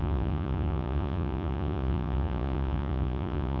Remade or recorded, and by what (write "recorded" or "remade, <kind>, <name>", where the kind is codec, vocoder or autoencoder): remade, vocoder, Vocos